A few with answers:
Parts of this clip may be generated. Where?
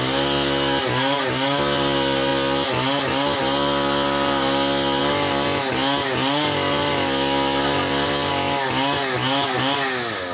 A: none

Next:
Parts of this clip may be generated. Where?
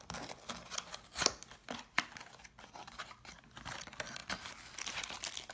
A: none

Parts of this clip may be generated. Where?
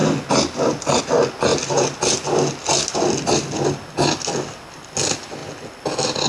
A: none